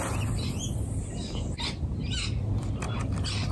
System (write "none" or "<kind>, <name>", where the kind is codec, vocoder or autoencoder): none